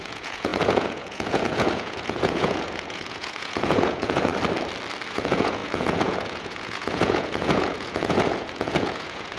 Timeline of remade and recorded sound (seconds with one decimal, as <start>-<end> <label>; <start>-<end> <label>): 0.0-4.3 remade; 4.3-5.1 recorded; 5.1-9.4 remade